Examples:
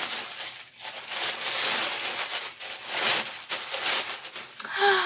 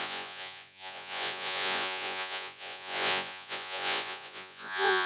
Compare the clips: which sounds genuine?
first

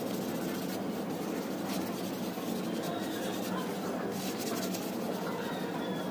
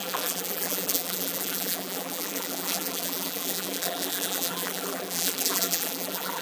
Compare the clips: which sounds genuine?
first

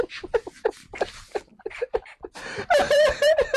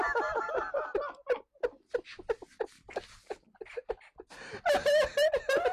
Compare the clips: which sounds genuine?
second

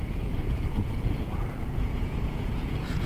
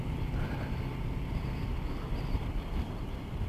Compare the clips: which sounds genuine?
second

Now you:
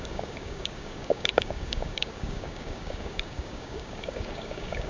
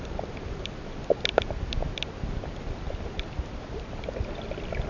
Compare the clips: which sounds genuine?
second